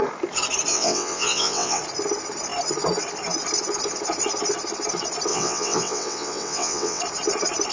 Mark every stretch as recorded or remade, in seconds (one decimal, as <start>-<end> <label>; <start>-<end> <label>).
0.0-0.7 recorded; 0.7-1.8 remade; 1.8-5.3 recorded; 5.3-7.0 remade; 7.0-7.7 recorded